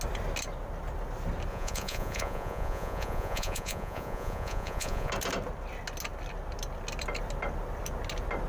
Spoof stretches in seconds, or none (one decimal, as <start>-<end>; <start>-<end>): 1.5-5.1